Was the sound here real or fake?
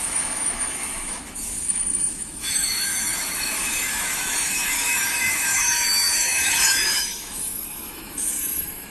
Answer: fake